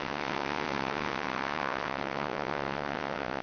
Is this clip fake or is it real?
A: fake